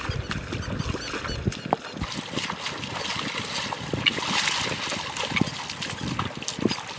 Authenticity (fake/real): real